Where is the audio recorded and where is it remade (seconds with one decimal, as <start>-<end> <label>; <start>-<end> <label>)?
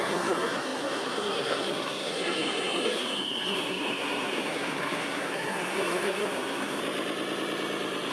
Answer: 0.0-6.8 remade; 6.8-8.1 recorded